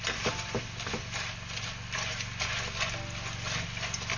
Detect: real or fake real